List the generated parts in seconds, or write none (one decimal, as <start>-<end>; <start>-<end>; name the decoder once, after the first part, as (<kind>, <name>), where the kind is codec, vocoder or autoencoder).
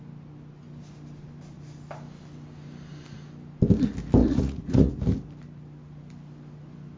4.2-4.9 (vocoder, Vocos)